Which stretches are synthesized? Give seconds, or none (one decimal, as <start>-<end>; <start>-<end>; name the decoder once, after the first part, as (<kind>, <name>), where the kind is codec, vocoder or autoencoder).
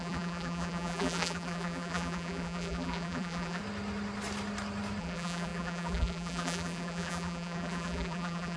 0.0-3.6 (vocoder, BigVGAN v2); 5.0-8.6